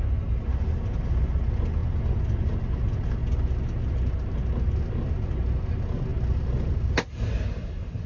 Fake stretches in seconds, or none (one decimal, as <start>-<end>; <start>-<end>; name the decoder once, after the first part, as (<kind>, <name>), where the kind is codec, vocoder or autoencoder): none